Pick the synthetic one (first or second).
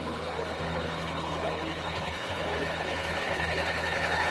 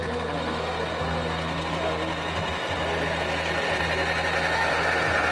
first